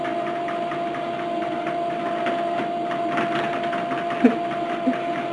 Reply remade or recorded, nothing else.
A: remade